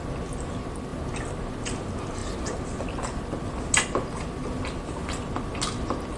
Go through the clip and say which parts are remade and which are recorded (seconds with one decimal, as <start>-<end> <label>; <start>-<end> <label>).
0.0-6.2 recorded